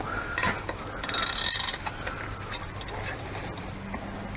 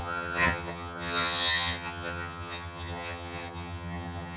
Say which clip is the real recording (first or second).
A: first